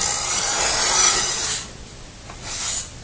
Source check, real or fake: real